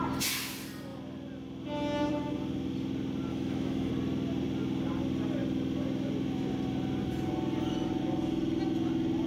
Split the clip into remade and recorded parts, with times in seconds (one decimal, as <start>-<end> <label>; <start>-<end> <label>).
0.0-3.3 recorded; 3.3-3.9 remade; 3.9-9.3 recorded